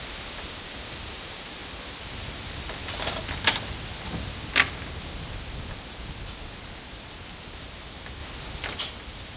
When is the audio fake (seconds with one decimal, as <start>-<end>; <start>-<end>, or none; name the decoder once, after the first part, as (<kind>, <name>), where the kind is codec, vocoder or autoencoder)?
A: 0.0-1.6 (vocoder, BigVGAN v2); 2.2-3.2; 7.6-8.2; 8.8-9.4